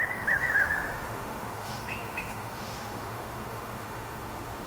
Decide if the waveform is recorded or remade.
remade